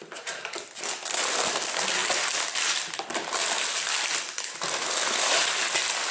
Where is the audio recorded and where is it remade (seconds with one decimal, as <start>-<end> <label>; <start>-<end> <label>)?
0.0-6.1 remade